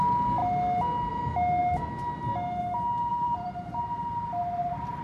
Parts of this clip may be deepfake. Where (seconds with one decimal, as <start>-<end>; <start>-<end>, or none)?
3.1-3.8

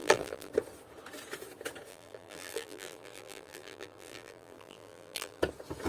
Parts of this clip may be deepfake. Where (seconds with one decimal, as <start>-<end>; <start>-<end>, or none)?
0.0-0.5; 1.9-5.4

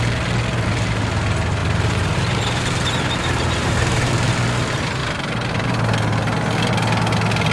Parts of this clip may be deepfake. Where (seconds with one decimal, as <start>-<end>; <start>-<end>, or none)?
1.6-4.1; 5.0-5.7

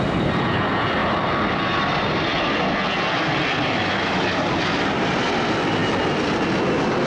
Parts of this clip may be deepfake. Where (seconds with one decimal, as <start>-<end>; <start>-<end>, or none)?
1.0-5.3

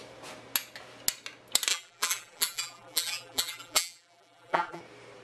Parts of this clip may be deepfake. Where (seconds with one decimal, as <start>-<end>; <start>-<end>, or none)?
1.7-4.8